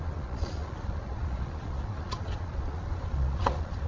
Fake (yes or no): yes